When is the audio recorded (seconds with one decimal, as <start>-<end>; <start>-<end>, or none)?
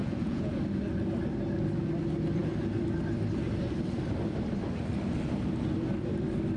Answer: 0.6-6.6